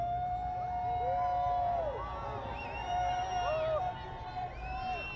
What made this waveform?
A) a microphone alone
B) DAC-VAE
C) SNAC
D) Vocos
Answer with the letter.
A